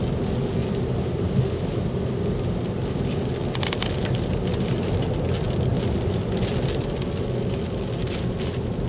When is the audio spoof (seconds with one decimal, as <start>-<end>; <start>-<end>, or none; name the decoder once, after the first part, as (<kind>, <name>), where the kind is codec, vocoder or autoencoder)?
0.6-1.9 (vocoder, BigVGAN v2)